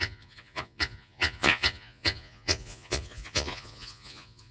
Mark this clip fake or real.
fake